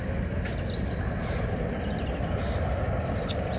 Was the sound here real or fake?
real